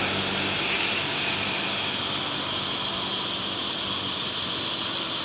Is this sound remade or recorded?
recorded